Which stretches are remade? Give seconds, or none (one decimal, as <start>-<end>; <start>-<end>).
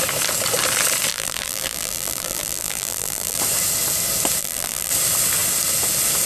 1.1-3.4; 4.4-4.9